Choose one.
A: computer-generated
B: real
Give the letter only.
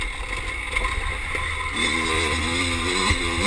B